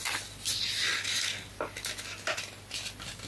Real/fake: real